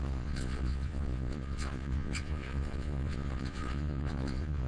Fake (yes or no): yes